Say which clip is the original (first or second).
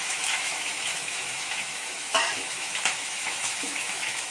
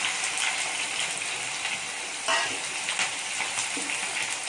second